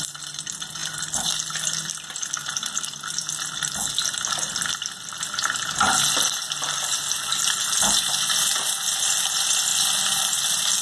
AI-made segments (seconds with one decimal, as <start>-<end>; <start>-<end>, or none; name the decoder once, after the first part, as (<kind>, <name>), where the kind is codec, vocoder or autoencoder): none